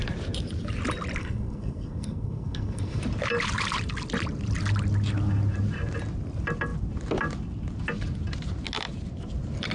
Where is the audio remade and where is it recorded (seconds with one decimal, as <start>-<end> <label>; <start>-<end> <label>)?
0.0-1.2 recorded; 1.2-3.0 remade; 3.0-9.7 recorded